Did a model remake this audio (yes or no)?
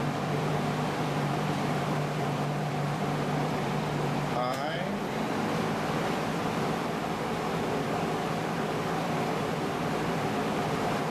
yes